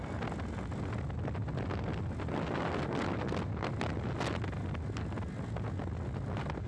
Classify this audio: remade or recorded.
recorded